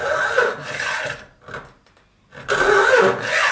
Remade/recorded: recorded